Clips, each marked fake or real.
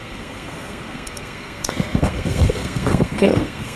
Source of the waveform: fake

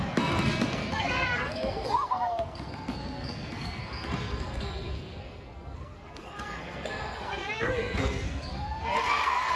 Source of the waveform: fake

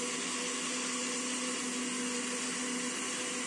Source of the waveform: real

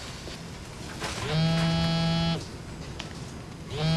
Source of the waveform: real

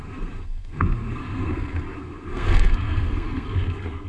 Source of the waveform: fake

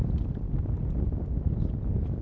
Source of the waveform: real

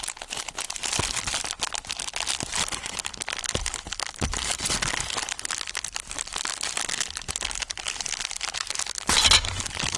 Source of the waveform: real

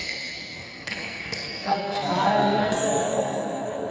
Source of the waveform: fake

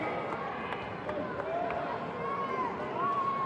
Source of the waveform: real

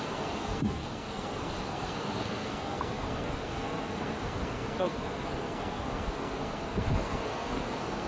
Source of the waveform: fake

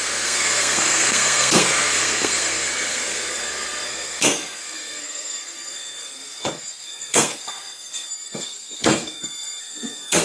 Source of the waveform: fake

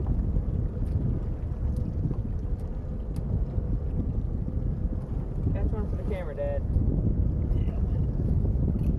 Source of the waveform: real